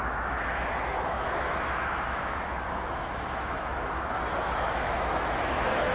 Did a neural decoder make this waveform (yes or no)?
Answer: yes